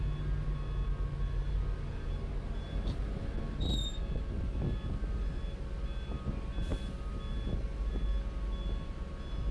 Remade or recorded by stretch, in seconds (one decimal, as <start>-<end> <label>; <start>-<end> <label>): 0.0-9.5 recorded